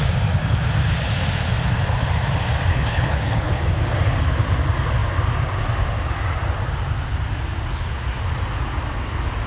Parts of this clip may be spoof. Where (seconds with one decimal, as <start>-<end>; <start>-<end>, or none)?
2.7-3.7